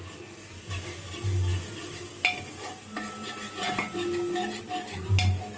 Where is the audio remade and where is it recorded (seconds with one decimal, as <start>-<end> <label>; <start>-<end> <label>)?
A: 0.0-5.6 recorded